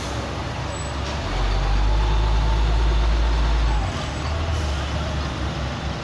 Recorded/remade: recorded